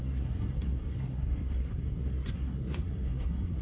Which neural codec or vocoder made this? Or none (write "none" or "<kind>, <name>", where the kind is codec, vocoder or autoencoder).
codec, SNAC